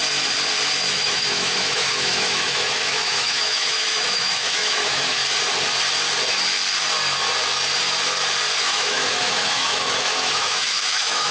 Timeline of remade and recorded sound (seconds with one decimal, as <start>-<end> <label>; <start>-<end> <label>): 0.0-0.9 recorded; 0.9-5.2 remade; 5.2-8.6 recorded; 8.6-11.3 remade